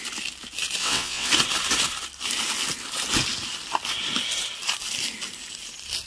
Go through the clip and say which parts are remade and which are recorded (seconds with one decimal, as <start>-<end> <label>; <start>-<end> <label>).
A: 0.0-0.8 recorded; 0.8-1.3 remade; 1.3-6.1 recorded